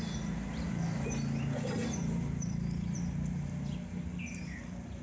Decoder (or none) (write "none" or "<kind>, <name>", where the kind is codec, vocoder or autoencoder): none